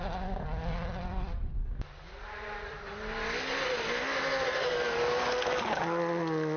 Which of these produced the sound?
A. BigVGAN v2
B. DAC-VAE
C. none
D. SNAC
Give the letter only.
C